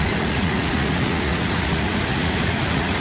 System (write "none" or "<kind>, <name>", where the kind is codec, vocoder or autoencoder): vocoder, Vocos